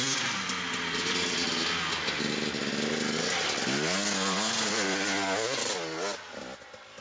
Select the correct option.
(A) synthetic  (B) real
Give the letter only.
B